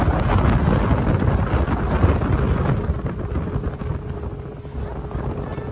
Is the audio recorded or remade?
recorded